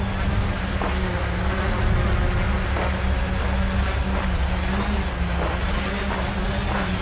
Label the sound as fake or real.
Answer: real